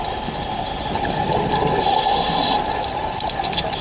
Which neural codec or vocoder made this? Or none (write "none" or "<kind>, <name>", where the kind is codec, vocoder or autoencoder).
none